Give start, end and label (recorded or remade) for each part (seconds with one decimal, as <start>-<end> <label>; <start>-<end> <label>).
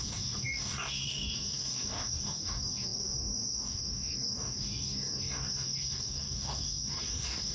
0.0-7.5 remade